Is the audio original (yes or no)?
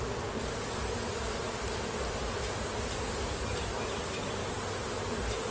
yes